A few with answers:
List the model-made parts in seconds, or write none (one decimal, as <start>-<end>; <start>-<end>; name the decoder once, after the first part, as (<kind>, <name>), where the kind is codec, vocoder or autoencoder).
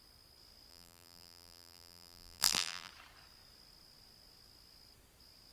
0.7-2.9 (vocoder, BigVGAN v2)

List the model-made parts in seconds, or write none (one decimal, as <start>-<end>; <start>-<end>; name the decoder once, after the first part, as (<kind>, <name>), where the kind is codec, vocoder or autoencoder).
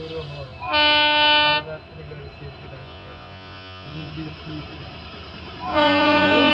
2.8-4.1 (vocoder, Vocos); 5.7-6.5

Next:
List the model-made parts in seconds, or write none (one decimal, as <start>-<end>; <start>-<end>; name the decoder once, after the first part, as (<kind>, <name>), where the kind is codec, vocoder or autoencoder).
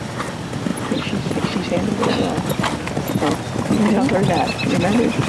none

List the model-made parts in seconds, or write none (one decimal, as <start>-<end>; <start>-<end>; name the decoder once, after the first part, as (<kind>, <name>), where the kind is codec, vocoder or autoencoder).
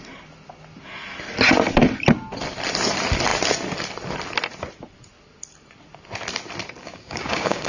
6.8-7.7 (codec, DAC)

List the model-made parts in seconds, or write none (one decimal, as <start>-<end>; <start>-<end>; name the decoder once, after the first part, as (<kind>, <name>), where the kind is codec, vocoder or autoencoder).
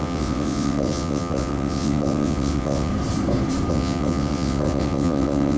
0.0-2.9 (vocoder, WaveNeXt); 3.7-5.6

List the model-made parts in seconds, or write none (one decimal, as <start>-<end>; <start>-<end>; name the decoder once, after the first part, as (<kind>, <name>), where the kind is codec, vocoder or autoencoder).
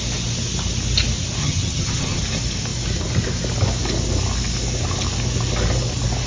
1.4-2.2 (vocoder, HiFi-GAN)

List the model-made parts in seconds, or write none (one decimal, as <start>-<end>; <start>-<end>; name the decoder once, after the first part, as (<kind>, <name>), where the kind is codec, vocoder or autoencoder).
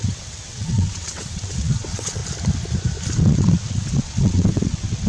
0.0-2.2 (vocoder, WaveNeXt); 3.1-5.1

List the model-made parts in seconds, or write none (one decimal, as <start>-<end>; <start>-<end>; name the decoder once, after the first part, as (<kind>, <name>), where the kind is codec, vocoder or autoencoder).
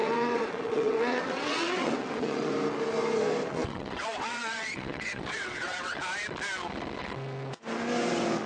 0.0-2.5 (vocoder, WaveNeXt); 3.5-6.0